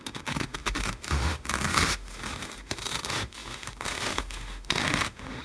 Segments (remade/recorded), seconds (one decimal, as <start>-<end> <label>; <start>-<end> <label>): 0.0-5.4 remade